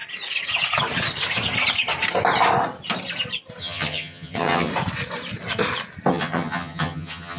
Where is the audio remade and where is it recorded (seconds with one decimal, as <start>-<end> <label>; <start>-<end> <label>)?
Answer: 0.0-3.6 recorded; 3.6-4.7 remade; 4.7-6.1 recorded; 6.1-7.4 remade